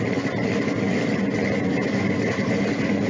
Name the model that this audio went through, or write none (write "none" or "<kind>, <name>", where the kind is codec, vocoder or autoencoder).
none